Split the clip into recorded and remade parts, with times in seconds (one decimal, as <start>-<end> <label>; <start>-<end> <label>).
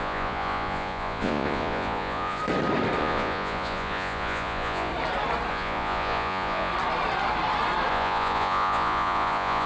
0.0-2.4 remade; 2.4-3.0 recorded; 3.0-4.9 remade; 4.9-5.5 recorded; 5.5-6.7 remade; 6.7-7.9 recorded; 7.9-9.7 remade